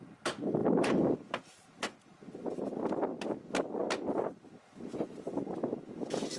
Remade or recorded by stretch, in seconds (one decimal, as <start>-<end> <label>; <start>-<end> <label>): 0.0-0.6 recorded; 0.6-2.1 remade; 2.1-6.4 recorded